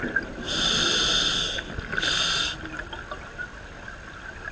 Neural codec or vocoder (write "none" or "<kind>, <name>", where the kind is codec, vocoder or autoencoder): none